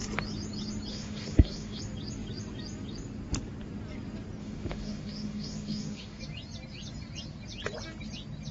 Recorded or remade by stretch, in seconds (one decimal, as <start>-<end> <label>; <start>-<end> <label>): 0.0-0.9 recorded; 0.9-1.8 remade; 1.8-4.4 recorded; 4.4-6.2 remade; 6.2-8.5 recorded